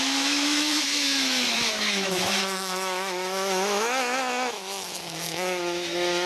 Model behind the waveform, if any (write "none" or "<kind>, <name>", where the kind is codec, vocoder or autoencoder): autoencoder, DAC-VAE